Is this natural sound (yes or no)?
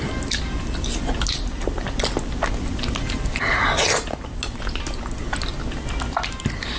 yes